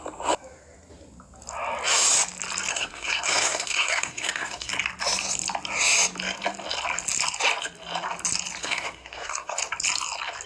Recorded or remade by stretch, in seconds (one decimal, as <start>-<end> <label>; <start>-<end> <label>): 0.0-2.7 recorded; 2.7-4.7 remade; 4.7-8.6 recorded; 8.6-9.6 remade; 9.6-10.5 recorded